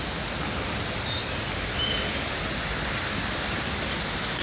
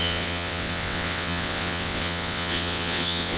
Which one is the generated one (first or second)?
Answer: second